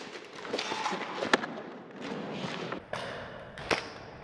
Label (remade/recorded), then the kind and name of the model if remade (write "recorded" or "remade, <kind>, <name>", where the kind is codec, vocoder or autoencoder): recorded